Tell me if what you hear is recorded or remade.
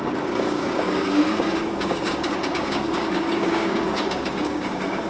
remade